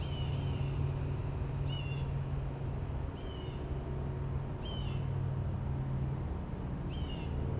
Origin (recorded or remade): recorded